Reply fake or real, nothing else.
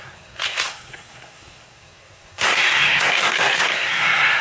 fake